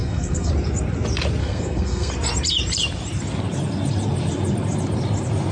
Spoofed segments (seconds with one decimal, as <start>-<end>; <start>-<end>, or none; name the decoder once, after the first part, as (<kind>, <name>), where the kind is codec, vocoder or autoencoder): 0.0-0.5 (codec, SNAC); 1.4-2.1